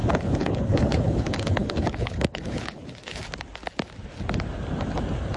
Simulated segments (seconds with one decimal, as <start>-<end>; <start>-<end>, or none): 0.0-3.2